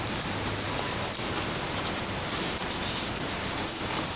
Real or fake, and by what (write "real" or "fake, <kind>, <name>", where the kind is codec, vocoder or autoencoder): real